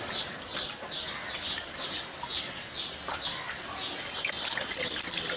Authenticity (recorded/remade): recorded